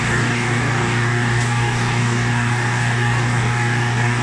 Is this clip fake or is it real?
fake